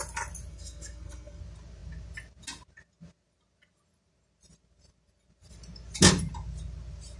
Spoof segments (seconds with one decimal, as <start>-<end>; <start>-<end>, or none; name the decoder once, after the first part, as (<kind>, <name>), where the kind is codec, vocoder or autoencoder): 0.5-1.4 (codec, SNAC)